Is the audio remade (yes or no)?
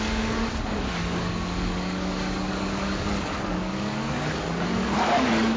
yes